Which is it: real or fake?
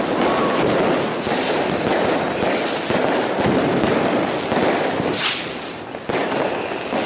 real